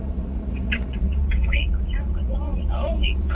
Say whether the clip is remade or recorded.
remade